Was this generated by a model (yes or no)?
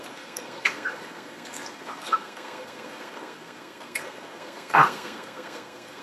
yes